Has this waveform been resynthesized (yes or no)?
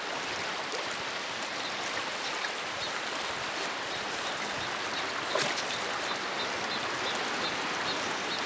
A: no